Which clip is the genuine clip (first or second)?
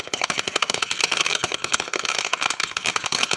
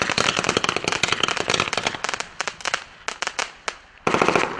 second